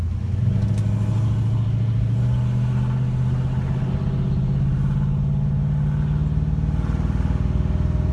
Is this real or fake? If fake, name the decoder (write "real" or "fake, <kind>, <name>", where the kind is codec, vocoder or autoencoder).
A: real